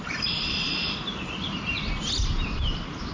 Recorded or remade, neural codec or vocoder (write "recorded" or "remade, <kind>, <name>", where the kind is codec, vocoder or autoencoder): recorded